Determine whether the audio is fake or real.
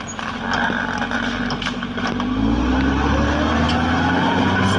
real